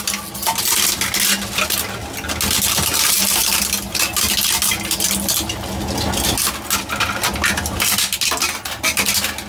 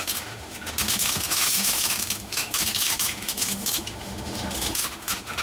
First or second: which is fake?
second